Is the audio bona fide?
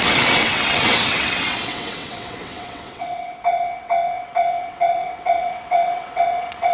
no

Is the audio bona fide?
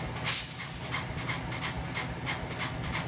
yes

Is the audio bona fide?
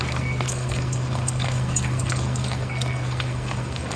no